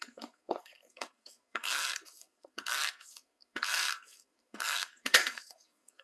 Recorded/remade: remade